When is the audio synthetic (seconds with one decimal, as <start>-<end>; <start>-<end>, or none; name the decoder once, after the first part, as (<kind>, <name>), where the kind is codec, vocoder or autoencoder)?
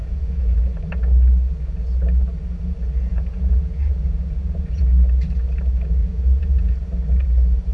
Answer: 0.0-0.6 (vocoder, Vocos); 3.1-4.8; 6.0-6.7